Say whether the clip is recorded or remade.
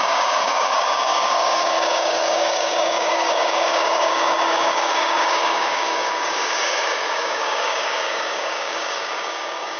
remade